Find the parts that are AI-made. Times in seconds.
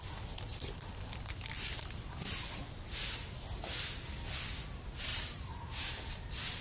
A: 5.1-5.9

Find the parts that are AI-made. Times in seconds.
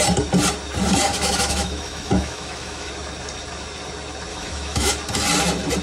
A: 1.1-2.9; 4.3-4.9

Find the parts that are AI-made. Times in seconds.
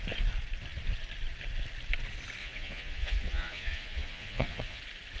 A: 2.4-4.8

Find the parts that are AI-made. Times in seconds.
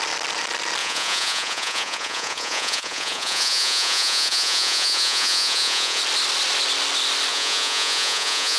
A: 0.8-6.0; 7.3-8.6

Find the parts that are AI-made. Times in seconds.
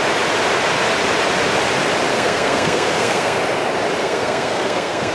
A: 2.1-3.4; 4.0-5.1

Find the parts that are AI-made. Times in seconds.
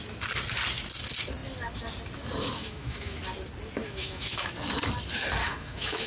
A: 2.6-3.2; 3.8-4.5; 5.4-6.1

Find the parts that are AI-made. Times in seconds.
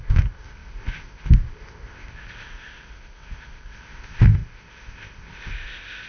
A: 0.0-6.1